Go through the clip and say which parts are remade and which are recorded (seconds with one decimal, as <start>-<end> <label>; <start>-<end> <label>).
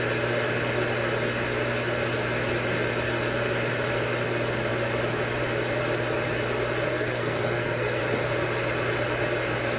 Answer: 0.0-6.9 recorded; 6.9-8.0 remade; 8.0-9.8 recorded